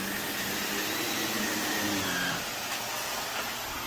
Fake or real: real